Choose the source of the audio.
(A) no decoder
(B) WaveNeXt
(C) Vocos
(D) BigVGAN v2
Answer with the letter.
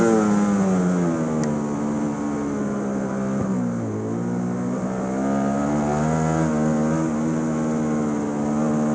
A